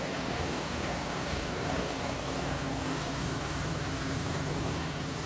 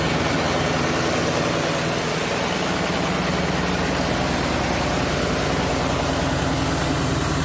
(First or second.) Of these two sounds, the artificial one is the first